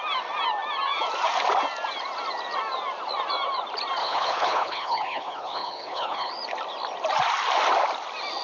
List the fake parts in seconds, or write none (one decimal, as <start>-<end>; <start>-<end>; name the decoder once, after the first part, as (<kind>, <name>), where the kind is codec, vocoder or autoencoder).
4.0-6.3 (codec, HILCodec)